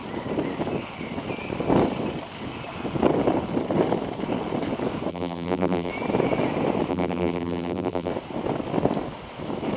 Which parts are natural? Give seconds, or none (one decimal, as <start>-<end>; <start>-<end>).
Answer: 0.0-5.1; 5.9-6.9; 8.1-9.8

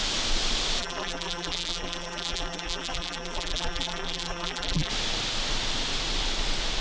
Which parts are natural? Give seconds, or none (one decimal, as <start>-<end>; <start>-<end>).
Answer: 0.0-0.8; 4.9-6.8

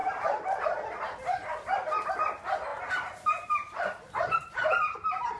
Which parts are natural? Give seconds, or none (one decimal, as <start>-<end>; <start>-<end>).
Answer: 0.6-2.7

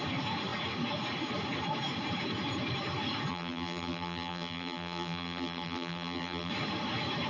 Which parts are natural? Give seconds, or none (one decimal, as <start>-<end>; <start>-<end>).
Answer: 0.0-3.3; 6.5-7.3

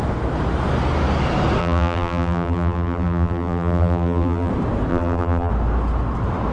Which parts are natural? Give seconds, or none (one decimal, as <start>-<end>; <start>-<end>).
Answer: 0.0-1.6; 4.5-4.9; 5.5-6.5